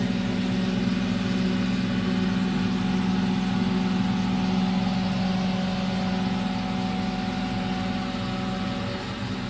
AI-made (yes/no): no